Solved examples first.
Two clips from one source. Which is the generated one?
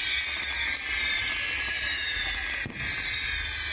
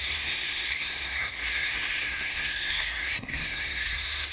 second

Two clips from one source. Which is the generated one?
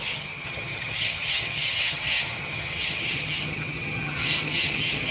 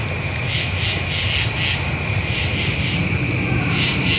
first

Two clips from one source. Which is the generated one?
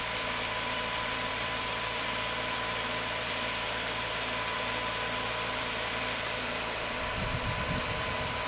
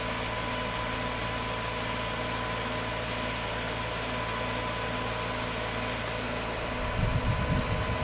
first